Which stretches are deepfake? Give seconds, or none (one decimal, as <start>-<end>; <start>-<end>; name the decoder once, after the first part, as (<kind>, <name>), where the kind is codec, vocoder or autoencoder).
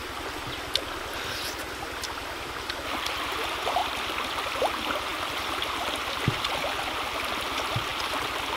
3.8-4.6 (vocoder, BigVGAN v2); 5.1-6.5